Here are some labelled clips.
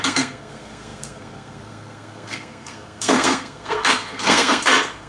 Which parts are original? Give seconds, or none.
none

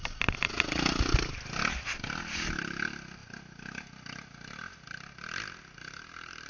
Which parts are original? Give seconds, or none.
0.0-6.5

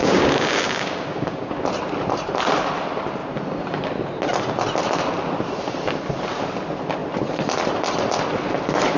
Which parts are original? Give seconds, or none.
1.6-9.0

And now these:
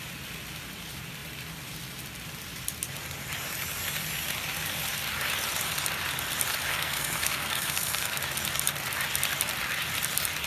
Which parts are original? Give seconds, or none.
0.0-6.7; 8.2-10.5